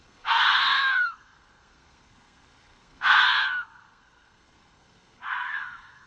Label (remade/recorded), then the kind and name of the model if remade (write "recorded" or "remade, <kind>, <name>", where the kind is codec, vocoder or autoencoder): remade, codec, SNAC